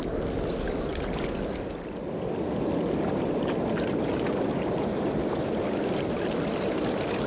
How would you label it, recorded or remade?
recorded